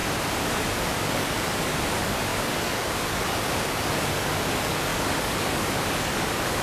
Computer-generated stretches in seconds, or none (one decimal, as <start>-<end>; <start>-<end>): 0.5-6.6

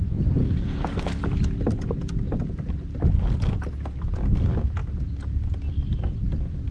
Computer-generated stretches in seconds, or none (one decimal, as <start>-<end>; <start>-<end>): 0.4-1.2

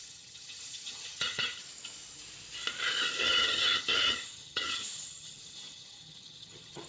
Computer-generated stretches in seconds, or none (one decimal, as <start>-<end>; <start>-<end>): 0.0-1.6; 3.2-6.9